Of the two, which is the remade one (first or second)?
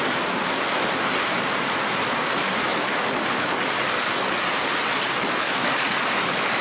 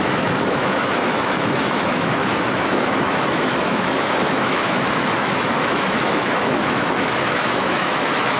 second